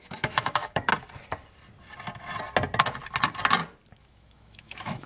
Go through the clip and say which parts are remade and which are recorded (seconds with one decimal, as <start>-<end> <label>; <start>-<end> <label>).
0.0-0.9 remade; 0.9-4.0 recorded; 4.0-5.1 remade